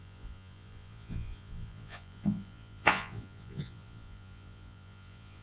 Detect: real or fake fake